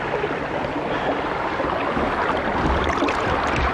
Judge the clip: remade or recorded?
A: recorded